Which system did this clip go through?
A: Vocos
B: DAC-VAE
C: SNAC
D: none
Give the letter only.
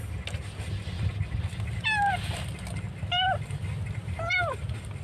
D